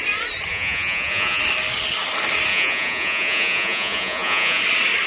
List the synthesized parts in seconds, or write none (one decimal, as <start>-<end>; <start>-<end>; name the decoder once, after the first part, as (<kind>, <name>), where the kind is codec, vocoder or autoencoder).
0.5-1.4 (vocoder, Vocos); 2.5-4.6

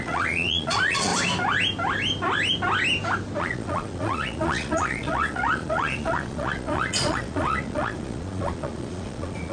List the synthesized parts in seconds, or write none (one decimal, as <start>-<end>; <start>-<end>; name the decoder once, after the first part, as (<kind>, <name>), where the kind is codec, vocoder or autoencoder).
0.0-1.1 (vocoder, Vocos); 3.4-9.5

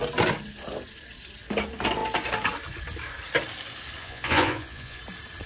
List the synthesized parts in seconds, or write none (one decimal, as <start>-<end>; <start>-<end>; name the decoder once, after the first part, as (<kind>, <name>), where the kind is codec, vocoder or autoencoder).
4.0-5.0 (vocoder, Vocos)

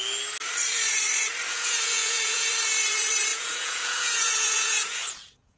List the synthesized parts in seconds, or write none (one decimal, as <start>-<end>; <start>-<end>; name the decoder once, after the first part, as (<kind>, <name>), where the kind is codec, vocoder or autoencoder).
1.5-2.5 (vocoder, Vocos); 3.3-5.6

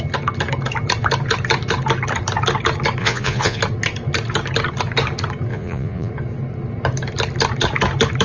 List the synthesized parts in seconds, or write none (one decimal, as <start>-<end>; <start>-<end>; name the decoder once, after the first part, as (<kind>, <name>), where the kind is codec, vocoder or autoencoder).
3.0-3.6 (vocoder, Vocos); 5.5-6.1

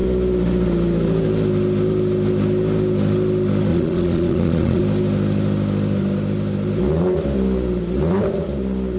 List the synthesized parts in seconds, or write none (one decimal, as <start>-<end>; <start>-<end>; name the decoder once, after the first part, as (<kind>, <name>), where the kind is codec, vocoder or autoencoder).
3.7-4.8 (vocoder, Vocos)

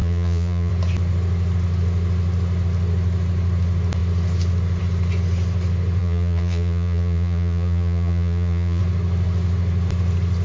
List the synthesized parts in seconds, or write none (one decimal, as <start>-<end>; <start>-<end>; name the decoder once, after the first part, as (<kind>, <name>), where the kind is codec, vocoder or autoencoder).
0.0-0.7 (vocoder, Vocos); 6.0-8.8